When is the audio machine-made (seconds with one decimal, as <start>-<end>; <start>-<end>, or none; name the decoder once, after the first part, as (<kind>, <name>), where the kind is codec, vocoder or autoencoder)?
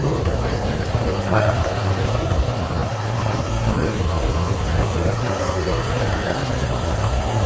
0.0-7.5 (codec, SNAC)